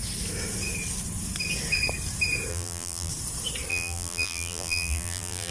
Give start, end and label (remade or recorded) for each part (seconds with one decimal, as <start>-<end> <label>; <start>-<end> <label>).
0.0-2.5 recorded; 2.5-3.1 remade; 3.1-3.7 recorded; 3.7-5.5 remade